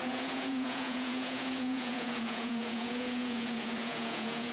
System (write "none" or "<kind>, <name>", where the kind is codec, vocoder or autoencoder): vocoder, Vocos